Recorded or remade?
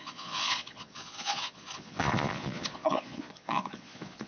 remade